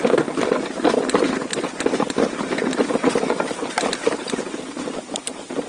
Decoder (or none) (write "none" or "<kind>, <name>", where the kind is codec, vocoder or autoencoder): none